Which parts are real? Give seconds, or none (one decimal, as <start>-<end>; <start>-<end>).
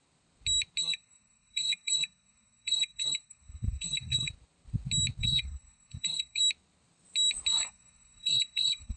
0.0-0.8; 4.3-5.2; 6.4-7.5